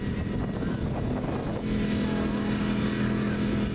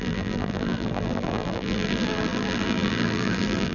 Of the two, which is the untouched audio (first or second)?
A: first